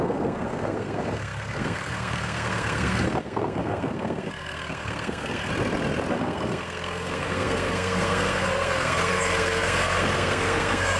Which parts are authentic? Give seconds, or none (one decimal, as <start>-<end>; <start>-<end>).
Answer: 5.5-6.1